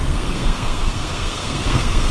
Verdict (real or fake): fake